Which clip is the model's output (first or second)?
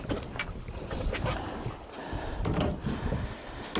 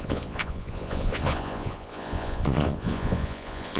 second